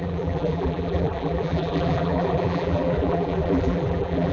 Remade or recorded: remade